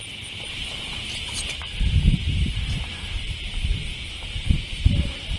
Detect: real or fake fake